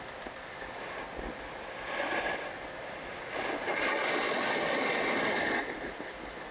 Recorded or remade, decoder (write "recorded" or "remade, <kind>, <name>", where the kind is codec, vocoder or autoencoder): recorded